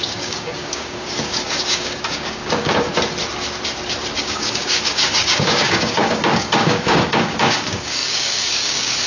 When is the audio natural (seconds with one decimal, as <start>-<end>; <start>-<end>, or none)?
2.9-4.2